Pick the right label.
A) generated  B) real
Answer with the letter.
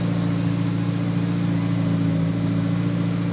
B